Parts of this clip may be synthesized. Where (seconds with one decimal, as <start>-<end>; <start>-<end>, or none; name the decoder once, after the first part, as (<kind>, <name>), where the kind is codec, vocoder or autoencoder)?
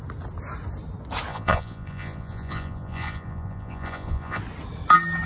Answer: 1.3-4.4 (vocoder, Vocos)